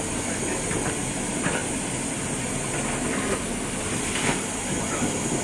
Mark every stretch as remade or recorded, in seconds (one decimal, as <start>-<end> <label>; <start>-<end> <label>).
0.0-5.4 recorded